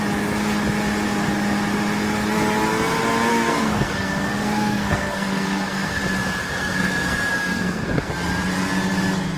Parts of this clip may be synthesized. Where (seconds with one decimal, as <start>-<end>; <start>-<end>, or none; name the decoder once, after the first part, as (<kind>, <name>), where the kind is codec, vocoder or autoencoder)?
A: 3.3-6.0 (codec, SNAC); 6.4-8.1